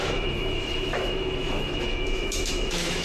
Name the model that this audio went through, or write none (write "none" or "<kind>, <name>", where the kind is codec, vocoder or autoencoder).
autoencoder, DAC-VAE